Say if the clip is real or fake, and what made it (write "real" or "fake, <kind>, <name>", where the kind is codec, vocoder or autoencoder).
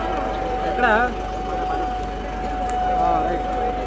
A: real